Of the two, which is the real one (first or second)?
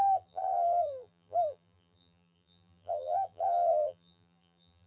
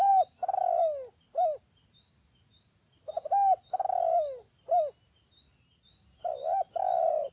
second